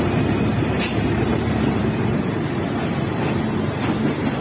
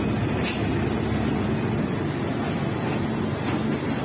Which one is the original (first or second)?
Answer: second